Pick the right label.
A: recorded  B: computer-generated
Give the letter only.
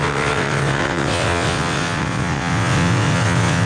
B